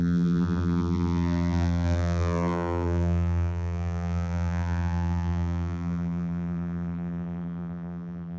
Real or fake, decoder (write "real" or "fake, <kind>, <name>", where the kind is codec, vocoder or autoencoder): fake, vocoder, BigVGAN v2